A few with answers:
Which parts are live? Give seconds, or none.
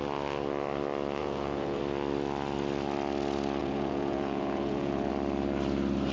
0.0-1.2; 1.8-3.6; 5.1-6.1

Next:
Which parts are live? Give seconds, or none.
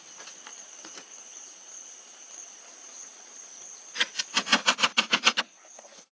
0.0-0.5; 4.2-6.2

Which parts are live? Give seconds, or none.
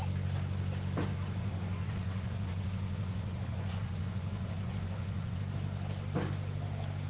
0.0-1.1; 5.4-7.1